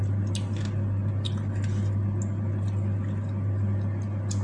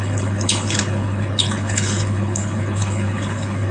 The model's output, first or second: second